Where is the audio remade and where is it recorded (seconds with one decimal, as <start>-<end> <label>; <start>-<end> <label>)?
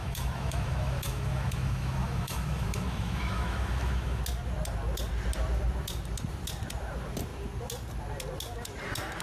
0.0-4.2 remade; 4.2-9.2 recorded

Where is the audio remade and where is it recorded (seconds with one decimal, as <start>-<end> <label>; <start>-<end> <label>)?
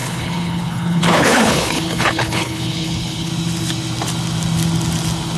0.0-3.3 remade; 3.3-5.4 recorded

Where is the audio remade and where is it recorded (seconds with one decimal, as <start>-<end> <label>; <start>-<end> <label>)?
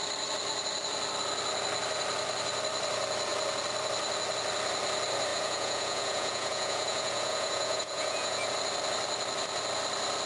0.0-5.3 recorded; 5.3-8.5 remade; 8.5-10.3 recorded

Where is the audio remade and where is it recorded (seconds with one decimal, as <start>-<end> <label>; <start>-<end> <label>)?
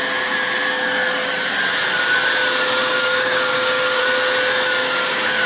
0.0-2.8 recorded; 2.8-4.0 remade; 4.0-4.8 recorded; 4.8-5.5 remade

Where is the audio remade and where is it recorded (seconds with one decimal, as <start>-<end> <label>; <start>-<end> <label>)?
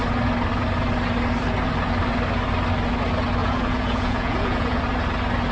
0.0-3.4 recorded; 3.4-4.8 remade; 4.8-5.5 recorded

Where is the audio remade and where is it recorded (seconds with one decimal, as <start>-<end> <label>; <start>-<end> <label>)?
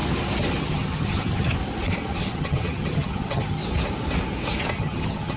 0.0-0.6 recorded; 0.6-1.5 remade; 1.5-2.2 recorded; 2.2-3.6 remade; 3.6-4.7 recorded; 4.7-5.4 remade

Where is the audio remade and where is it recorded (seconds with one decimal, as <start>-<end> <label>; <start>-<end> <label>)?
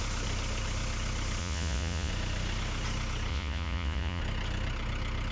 0.0-1.4 recorded; 1.4-2.1 remade; 2.1-3.3 recorded; 3.3-4.2 remade; 4.2-5.3 recorded